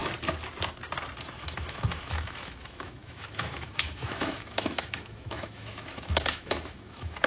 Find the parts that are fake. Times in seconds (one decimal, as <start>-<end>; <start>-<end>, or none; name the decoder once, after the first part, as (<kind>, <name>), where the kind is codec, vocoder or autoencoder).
1.4-7.3 (autoencoder, DAC-VAE)